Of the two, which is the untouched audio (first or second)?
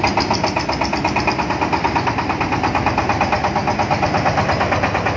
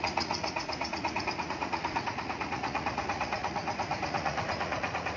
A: first